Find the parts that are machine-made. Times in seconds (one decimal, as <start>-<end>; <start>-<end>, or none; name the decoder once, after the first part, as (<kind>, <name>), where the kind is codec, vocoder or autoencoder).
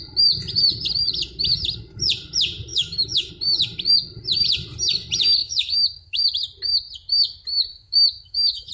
2.7-3.3 (autoencoder, DAC-VAE); 5.4-6.2; 7.7-8.7